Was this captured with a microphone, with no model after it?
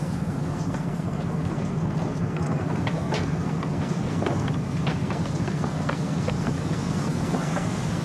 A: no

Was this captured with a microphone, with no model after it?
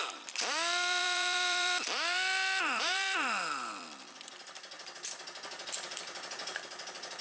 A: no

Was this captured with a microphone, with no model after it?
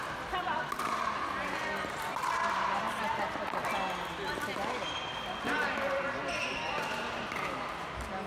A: yes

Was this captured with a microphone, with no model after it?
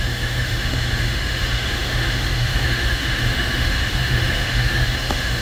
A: no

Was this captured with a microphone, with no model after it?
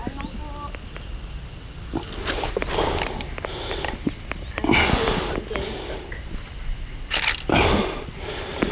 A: yes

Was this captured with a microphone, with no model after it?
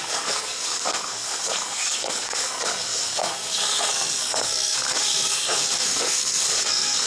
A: no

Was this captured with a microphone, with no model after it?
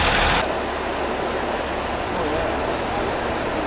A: yes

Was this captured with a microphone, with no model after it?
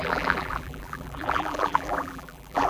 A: no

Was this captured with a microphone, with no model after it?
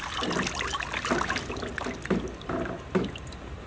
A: yes